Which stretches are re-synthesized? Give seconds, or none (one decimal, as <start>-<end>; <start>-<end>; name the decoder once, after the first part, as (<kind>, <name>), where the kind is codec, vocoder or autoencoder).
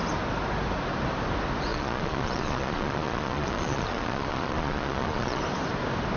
1.7-5.4 (vocoder, Vocos)